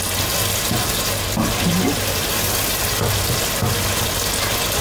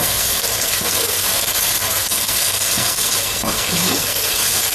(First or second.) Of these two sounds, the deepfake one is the second